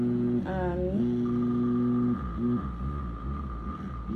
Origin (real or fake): real